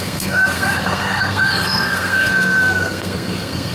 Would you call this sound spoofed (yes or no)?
yes